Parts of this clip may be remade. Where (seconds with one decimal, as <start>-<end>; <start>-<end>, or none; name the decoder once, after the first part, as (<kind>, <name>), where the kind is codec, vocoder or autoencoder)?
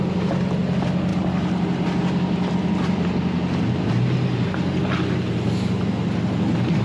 none